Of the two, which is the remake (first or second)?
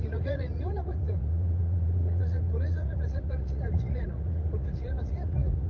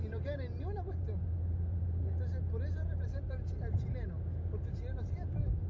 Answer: first